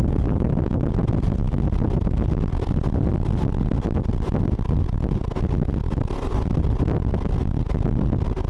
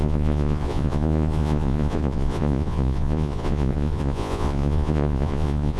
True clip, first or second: first